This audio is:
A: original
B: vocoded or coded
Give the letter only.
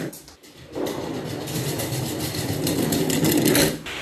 A